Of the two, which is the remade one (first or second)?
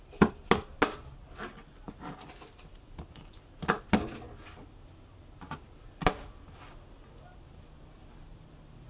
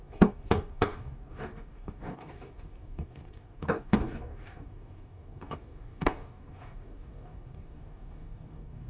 second